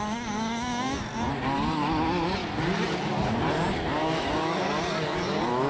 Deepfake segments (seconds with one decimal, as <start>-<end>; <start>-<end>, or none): 4.0-4.6